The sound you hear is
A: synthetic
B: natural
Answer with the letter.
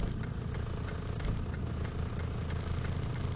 B